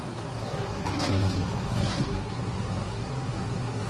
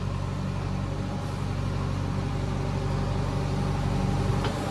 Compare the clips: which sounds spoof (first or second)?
first